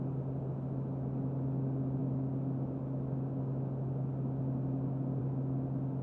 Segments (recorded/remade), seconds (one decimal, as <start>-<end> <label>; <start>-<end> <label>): 0.0-6.0 recorded